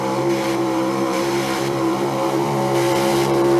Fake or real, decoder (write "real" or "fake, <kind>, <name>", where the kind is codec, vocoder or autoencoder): fake, vocoder, BigVGAN v2